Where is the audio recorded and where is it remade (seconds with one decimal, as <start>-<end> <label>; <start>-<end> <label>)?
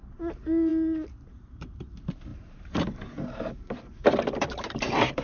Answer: 0.0-2.3 recorded; 2.3-3.5 remade; 3.5-4.0 recorded; 4.0-5.2 remade